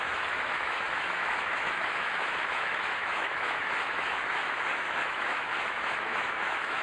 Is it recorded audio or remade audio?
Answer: remade